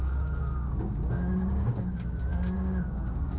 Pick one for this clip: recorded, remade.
remade